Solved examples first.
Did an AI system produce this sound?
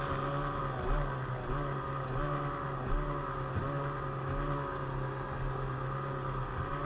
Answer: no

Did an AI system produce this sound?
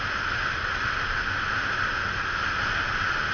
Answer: no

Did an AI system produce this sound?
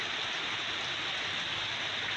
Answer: no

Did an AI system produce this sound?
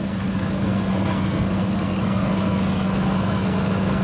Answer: yes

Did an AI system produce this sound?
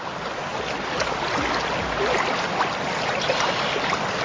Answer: no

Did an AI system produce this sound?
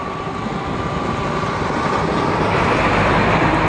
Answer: no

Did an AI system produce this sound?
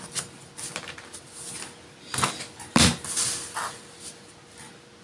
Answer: no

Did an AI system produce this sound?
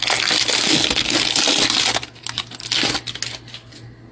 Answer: no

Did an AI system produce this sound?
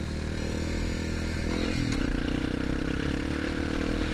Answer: yes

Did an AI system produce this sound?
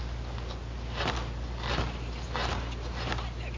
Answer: no